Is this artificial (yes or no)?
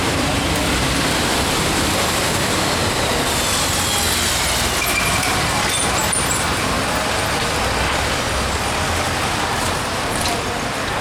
no